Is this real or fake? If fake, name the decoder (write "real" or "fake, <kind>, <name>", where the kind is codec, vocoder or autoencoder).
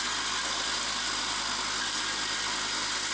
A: real